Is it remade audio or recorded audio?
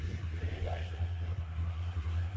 remade